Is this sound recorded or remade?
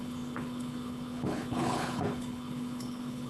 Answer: remade